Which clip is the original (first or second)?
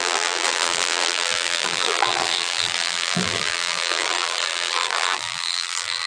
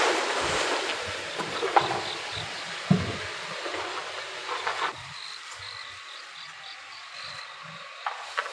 second